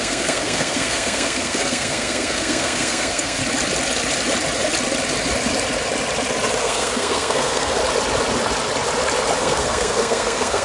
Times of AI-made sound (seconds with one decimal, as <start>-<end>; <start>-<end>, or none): 0.0-3.4; 6.6-7.8; 9.4-10.6